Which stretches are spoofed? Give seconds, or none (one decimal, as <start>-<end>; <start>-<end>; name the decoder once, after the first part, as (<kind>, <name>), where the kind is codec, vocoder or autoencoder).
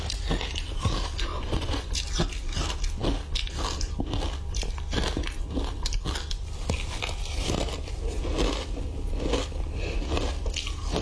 1.3-1.9 (vocoder, Vocos)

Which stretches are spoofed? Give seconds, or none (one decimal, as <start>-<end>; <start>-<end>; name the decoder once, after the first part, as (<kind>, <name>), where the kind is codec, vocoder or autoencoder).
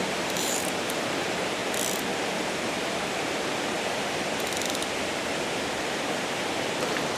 0.0-1.6 (vocoder, BigVGAN v2); 5.9-7.2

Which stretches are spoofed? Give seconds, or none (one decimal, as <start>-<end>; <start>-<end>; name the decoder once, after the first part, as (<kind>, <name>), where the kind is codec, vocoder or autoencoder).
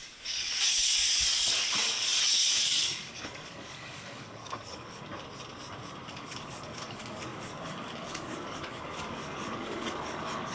0.0-5.1 (codec, DAC); 6.1-10.5